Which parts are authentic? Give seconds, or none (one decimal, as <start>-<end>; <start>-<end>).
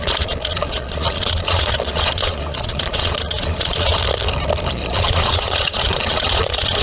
3.9-4.7